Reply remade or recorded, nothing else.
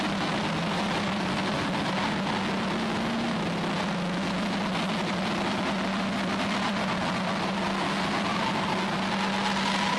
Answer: recorded